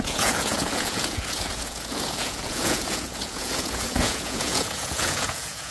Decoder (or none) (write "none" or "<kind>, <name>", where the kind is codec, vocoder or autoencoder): vocoder, Vocos